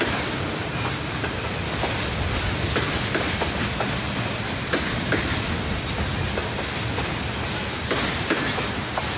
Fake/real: real